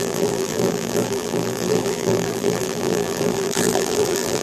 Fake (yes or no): yes